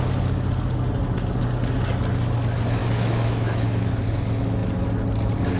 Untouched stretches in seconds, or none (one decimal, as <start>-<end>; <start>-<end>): 0.0-2.8; 3.9-5.6

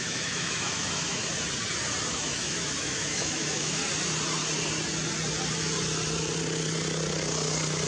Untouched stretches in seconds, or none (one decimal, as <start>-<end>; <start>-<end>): 1.2-2.1; 3.8-7.9

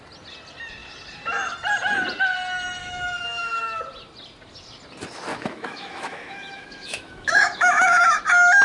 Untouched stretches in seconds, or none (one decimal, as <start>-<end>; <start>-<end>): 0.0-2.8; 3.8-5.3; 8.2-8.6

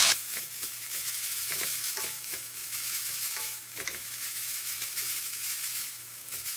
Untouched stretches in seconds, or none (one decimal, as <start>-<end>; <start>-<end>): none

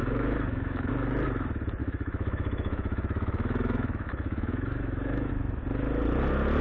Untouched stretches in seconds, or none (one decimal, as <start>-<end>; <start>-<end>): 0.9-1.8; 5.3-6.6

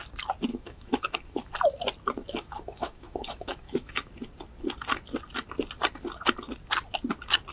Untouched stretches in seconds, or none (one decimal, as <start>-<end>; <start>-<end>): 0.0-0.5; 1.5-2.2; 4.1-7.5

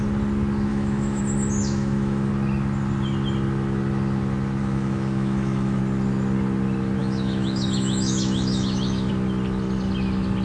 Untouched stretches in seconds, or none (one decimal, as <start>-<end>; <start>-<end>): 0.0-0.7; 1.2-1.6; 2.3-4.6; 5.8-7.0; 9.1-10.4